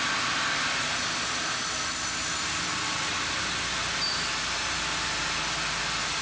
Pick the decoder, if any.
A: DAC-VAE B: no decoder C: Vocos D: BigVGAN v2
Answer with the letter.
B